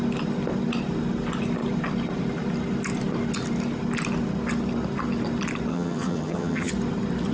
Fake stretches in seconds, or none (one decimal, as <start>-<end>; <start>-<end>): 5.7-6.7